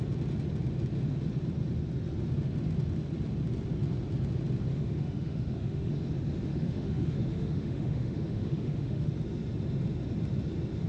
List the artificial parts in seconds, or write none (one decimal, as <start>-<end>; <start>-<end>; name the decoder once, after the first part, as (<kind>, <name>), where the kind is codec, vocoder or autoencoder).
4.7-5.9 (autoencoder, DAC-VAE); 6.5-9.1